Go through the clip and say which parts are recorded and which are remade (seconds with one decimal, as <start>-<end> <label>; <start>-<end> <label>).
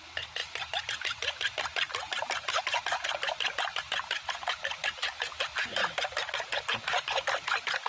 0.0-7.9 recorded